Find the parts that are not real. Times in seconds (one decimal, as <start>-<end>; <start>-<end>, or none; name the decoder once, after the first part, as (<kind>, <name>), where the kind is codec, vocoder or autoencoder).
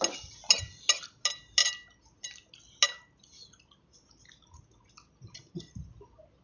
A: none